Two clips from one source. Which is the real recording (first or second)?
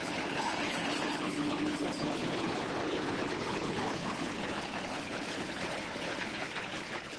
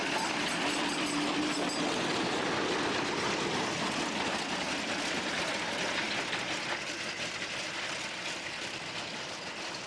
second